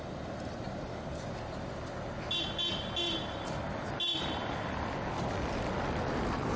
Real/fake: real